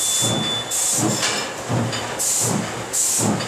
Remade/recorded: recorded